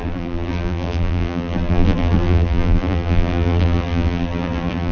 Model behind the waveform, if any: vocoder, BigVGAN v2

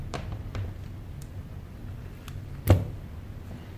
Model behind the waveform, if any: none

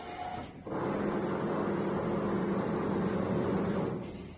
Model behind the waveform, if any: none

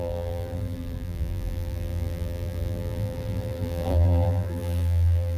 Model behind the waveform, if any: vocoder, BigVGAN v2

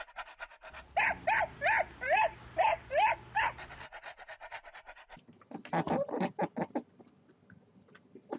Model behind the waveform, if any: none